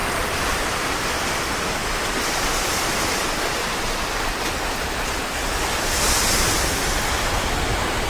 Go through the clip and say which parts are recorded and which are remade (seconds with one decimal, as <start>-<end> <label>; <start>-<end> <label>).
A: 0.0-0.5 remade; 0.5-8.1 recorded